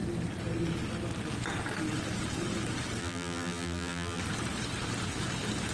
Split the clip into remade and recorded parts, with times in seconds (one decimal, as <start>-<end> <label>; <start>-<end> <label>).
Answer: 0.0-3.0 recorded; 3.0-4.2 remade; 4.2-5.7 recorded